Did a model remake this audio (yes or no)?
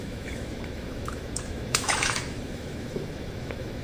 yes